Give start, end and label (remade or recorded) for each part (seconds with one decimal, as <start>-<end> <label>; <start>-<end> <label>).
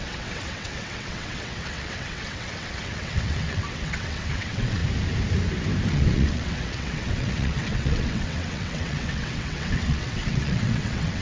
0.0-4.8 remade; 4.8-5.9 recorded; 5.9-11.2 remade